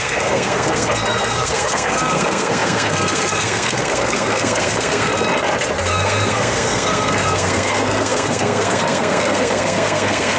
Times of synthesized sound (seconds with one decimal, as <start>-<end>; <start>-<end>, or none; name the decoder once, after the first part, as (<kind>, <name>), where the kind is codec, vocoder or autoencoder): 0.0-5.1 (codec, SNAC); 5.8-10.4